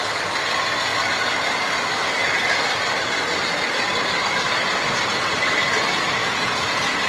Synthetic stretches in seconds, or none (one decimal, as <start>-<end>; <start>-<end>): 6.2-7.1